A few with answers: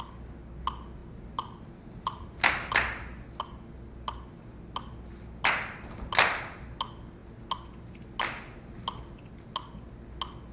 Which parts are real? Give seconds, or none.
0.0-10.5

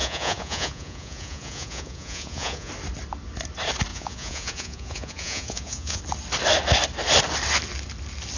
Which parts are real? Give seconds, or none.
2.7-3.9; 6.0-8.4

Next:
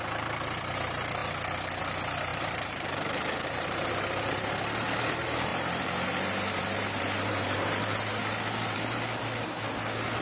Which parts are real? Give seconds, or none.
0.0-2.3; 4.4-5.5; 9.0-10.2

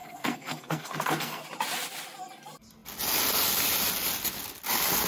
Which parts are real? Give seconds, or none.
1.4-5.1

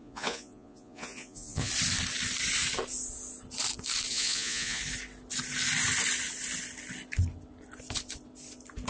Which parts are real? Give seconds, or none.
1.7-4.1; 4.8-8.9

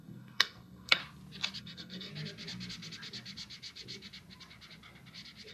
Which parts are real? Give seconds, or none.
1.0-1.6; 2.1-5.5

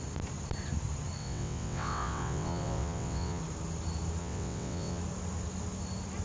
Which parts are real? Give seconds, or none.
0.0-1.2; 3.4-4.2; 5.0-6.2

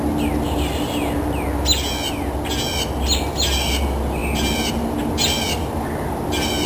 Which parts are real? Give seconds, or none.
0.0-6.7